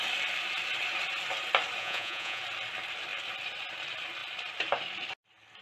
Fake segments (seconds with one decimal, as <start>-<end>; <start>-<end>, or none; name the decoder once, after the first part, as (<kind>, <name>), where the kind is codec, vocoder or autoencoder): 1.8-2.4 (vocoder, Vocos)